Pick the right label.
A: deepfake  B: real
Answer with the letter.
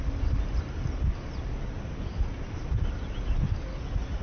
B